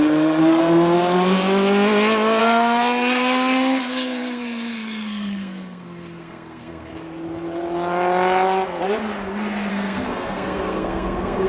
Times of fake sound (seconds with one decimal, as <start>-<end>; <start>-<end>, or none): 0.0-0.6; 2.4-6.9; 9.7-11.5